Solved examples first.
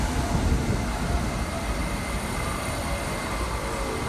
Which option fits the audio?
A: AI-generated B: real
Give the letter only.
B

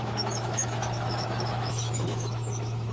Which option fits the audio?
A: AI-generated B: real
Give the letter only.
A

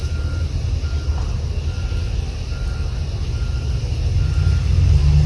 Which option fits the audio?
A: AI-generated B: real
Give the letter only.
B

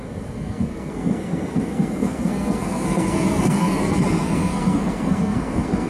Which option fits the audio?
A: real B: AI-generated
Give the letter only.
B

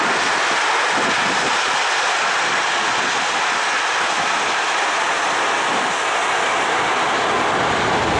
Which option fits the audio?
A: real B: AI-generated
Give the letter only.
A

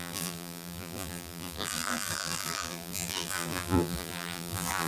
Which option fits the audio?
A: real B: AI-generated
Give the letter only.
B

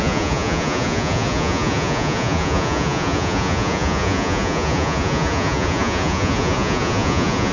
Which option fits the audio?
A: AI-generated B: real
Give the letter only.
A